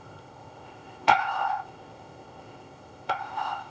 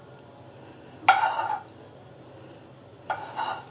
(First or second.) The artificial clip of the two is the first